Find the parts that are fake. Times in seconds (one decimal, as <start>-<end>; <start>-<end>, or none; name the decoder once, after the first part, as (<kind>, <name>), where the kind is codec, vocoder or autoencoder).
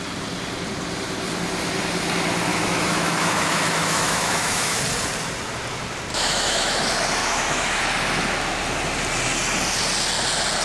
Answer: 2.5-4.8 (autoencoder, DAC-VAE); 6.1-6.8; 7.2-7.8